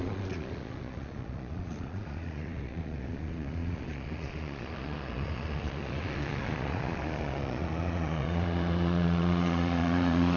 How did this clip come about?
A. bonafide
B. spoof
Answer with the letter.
B